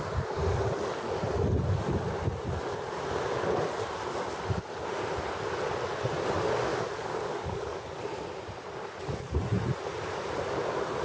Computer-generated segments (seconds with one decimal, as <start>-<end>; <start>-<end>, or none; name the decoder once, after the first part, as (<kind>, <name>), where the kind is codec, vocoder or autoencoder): 6.7-7.8 (codec, DAC)

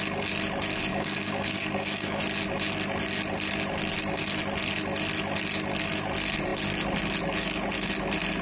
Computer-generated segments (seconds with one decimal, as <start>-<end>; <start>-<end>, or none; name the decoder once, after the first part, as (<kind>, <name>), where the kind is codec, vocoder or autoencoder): 0.9-2.2 (codec, DAC)

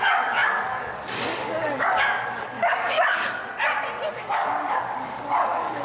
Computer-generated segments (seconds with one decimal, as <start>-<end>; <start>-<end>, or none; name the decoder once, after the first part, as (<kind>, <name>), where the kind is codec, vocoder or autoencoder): 0.0-3.4 (codec, DAC); 4.1-5.8

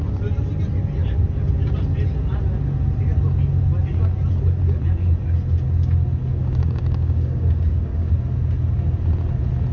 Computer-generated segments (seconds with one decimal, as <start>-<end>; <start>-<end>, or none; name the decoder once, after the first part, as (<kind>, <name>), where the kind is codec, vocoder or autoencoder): 6.4-8.1 (codec, DAC)

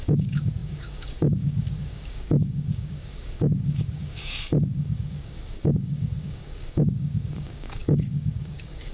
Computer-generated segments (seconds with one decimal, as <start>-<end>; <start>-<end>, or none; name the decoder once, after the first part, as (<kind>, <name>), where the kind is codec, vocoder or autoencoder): 0.0-8.9 (codec, DAC)

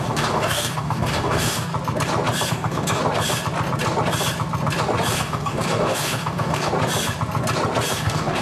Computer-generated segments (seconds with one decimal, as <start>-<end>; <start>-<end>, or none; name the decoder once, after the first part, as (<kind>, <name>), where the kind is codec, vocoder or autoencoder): 0.0-1.7 (codec, DAC); 2.5-3.0; 5.1-6.7; 7.9-8.4

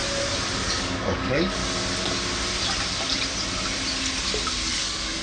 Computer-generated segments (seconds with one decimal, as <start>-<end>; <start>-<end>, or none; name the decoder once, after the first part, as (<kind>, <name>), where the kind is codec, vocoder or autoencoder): 0.5-1.6 (codec, DAC); 4.7-5.2

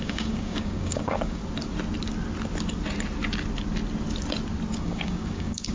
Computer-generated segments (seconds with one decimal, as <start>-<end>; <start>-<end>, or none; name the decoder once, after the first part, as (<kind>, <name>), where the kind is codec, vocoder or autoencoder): 0.0-1.4 (codec, DAC); 4.8-5.7